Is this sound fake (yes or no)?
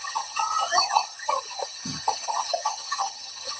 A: yes